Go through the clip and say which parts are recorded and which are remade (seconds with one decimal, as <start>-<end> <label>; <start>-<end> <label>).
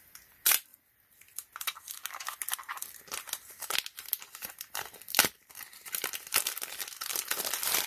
0.0-0.7 remade; 0.7-4.7 recorded; 4.7-5.4 remade; 5.4-6.4 recorded; 6.4-7.9 remade